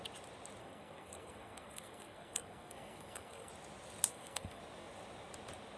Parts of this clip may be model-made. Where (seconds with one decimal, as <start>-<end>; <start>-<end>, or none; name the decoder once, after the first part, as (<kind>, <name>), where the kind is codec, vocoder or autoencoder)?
0.6-3.5 (codec, SNAC); 4.1-4.6